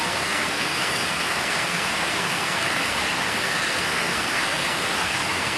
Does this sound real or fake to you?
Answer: fake